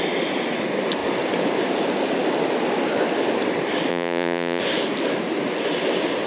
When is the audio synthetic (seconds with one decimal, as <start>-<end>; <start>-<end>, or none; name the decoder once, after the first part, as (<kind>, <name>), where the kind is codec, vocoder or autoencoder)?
3.9-4.6 (vocoder, Vocos)